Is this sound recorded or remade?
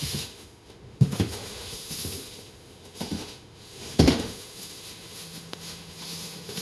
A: remade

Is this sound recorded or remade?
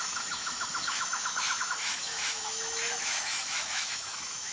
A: remade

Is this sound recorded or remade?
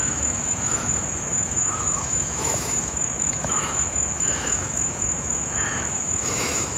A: remade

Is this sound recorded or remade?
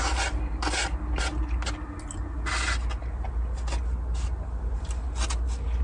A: recorded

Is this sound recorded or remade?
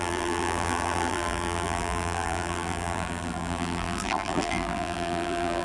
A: remade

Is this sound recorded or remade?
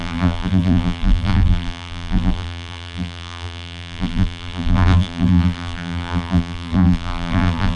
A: remade